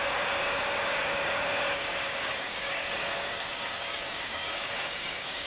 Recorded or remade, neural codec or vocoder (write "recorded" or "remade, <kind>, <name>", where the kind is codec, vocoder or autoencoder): remade, codec, DAC